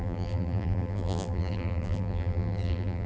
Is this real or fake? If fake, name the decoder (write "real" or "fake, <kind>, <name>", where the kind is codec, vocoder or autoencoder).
fake, vocoder, BigVGAN v2